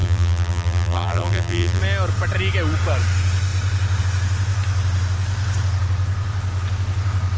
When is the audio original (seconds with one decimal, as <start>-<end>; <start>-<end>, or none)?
1.8-7.4